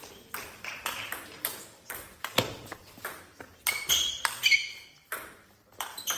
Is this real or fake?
fake